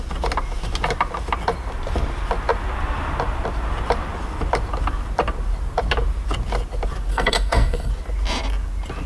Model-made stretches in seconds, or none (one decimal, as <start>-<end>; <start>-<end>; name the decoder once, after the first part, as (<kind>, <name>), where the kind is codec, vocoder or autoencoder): 7.1-7.9 (codec, SNAC)